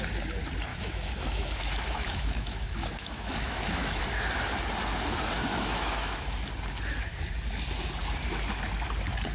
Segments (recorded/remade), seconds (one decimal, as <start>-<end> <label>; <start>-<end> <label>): 0.0-0.7 recorded; 0.7-4.0 remade; 4.0-5.5 recorded; 5.5-6.2 remade; 6.2-9.3 recorded